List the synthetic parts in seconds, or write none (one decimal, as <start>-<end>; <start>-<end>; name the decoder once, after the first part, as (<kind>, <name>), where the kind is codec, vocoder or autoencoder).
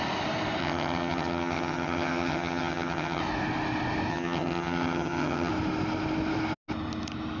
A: 0.6-3.2 (vocoder, HiFi-GAN); 4.1-5.5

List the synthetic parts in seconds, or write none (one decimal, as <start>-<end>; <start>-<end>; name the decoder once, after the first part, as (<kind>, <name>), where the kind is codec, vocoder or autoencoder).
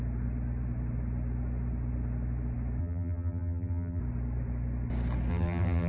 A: 2.8-4.0 (vocoder, BigVGAN v2); 5.3-5.9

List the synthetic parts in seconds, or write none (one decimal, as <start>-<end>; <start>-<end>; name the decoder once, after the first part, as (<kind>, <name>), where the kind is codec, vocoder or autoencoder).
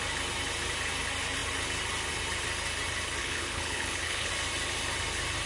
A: 3.2-4.3 (codec, HILCodec)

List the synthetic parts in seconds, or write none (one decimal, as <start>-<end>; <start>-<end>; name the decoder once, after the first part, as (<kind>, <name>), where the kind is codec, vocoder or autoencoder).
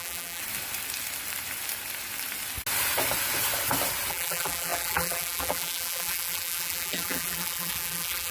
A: 0.0-0.4 (vocoder, BigVGAN v2); 4.1-8.3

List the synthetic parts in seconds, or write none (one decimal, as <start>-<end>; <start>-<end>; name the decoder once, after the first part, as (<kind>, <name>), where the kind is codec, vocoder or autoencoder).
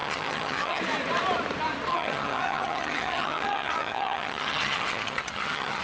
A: 0.0-0.8 (vocoder, HiFi-GAN); 1.9-5.8